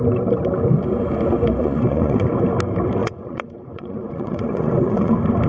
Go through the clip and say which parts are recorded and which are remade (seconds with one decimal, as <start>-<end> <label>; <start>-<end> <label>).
0.0-1.6 recorded; 1.6-2.3 remade; 2.3-3.0 recorded; 3.0-5.1 remade; 5.1-5.5 recorded